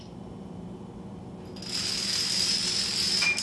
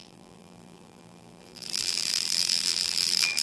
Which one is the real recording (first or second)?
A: first